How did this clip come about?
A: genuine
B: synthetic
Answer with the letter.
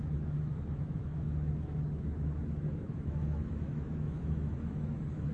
B